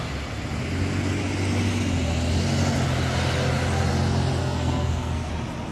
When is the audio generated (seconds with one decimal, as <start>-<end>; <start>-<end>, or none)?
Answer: 4.4-5.3